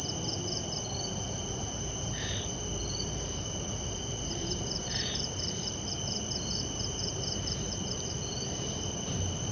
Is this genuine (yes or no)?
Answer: no